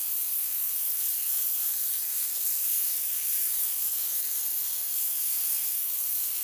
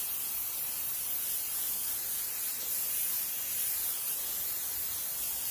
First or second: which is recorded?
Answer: second